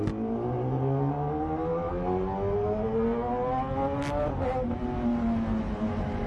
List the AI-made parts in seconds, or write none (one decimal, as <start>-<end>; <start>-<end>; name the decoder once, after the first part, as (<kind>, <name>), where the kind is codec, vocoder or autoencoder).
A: none